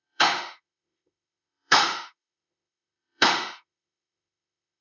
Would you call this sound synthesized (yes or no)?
yes